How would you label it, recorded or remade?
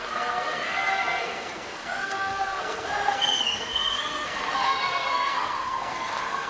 remade